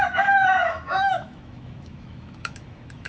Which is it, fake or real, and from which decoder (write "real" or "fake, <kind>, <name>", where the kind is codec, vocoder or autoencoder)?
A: fake, autoencoder, DAC-VAE